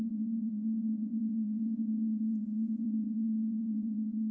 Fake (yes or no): yes